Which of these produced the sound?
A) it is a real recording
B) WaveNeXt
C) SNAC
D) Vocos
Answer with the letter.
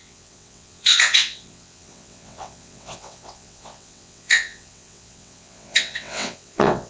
B